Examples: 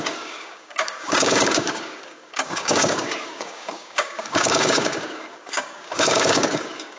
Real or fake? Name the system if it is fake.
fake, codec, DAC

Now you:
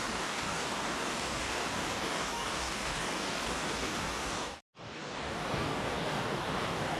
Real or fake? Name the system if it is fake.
fake, codec, DAC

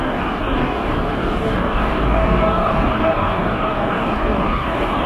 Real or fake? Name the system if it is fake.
fake, codec, DAC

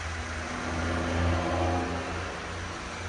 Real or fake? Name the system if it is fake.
real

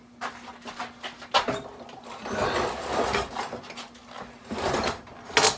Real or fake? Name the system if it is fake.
real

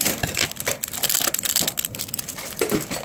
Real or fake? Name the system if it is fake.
real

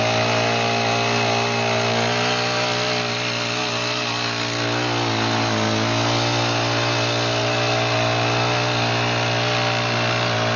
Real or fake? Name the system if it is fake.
real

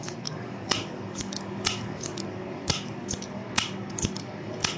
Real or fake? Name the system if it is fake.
fake, codec, DAC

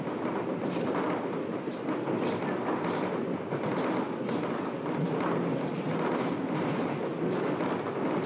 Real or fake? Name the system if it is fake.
real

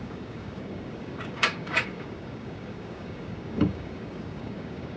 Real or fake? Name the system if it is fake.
fake, codec, DAC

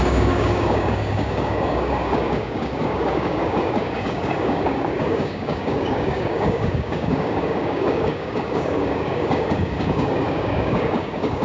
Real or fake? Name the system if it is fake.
fake, codec, DAC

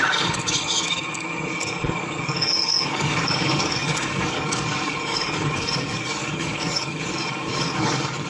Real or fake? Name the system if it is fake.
fake, codec, DAC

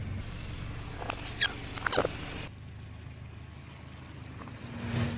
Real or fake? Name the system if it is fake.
real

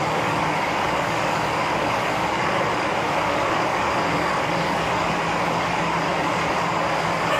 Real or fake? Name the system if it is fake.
fake, codec, DAC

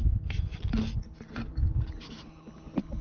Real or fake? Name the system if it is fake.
real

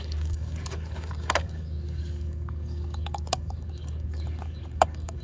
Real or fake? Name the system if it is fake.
fake, codec, DAC